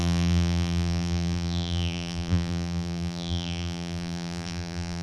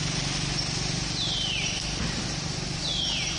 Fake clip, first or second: first